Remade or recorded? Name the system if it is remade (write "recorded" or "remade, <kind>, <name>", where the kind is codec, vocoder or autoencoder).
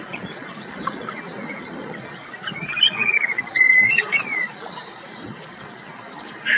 remade, vocoder, Vocos